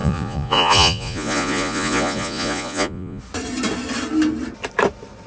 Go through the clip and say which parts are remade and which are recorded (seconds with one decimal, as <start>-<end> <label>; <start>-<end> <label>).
0.0-3.2 remade; 3.2-5.3 recorded